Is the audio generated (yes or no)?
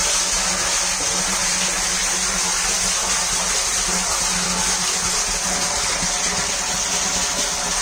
no